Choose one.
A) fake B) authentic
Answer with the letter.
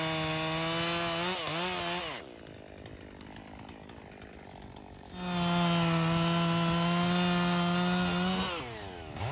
B